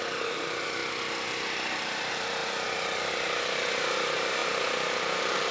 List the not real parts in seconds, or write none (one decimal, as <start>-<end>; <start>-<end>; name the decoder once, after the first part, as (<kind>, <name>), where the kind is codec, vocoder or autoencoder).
0.0-0.8 (vocoder, BigVGAN v2); 1.9-5.5